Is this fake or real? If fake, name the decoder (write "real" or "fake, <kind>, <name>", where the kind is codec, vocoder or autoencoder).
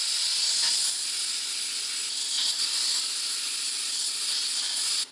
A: real